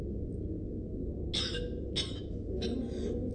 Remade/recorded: recorded